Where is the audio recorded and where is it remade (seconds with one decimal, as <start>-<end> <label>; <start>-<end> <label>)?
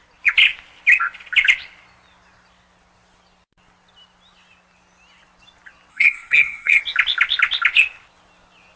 0.0-5.9 recorded; 5.9-6.8 remade; 6.8-8.8 recorded